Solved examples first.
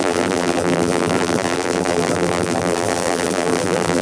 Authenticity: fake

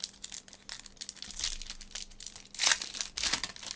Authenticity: real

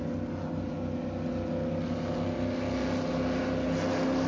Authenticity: real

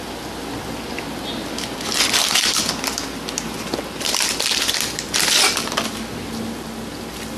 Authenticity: real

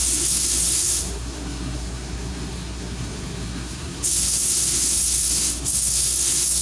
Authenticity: fake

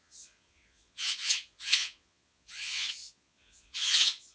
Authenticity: fake